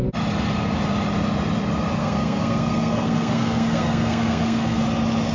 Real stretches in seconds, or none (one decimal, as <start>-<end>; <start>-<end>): 0.0-2.0; 4.8-5.3